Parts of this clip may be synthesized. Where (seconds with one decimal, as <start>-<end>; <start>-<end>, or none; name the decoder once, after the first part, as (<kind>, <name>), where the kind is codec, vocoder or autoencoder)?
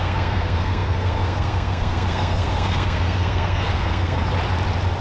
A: 0.0-4.2 (codec, SNAC)